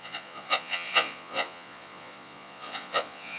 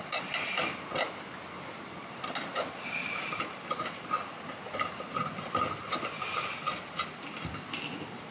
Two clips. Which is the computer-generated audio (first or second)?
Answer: first